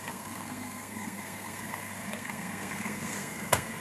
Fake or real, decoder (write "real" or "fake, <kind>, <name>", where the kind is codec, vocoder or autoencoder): fake, codec, SNAC